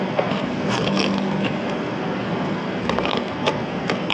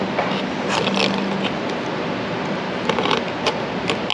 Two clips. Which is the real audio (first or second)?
second